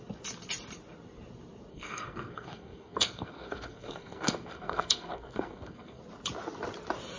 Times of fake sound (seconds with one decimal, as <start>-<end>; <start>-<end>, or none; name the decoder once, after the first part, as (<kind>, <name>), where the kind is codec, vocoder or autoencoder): 1.7-6.0 (codec, SNAC)